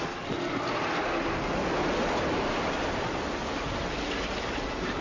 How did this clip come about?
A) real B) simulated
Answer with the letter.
A